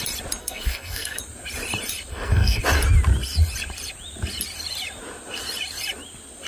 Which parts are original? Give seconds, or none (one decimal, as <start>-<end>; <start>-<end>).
0.0-0.4; 1.2-2.1; 2.6-6.5

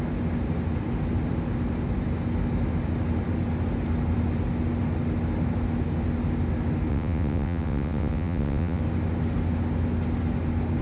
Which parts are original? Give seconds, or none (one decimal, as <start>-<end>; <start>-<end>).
0.0-6.9; 8.8-10.8